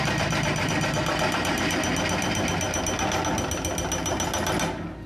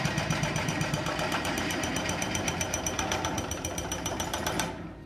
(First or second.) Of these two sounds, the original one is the first